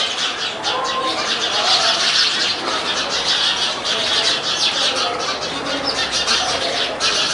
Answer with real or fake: real